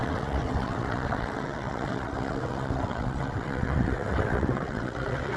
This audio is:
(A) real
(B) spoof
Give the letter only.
B